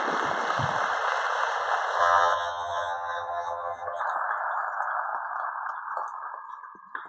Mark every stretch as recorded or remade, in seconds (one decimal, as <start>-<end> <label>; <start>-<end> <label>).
0.0-2.0 recorded; 2.0-4.0 remade; 4.0-7.1 recorded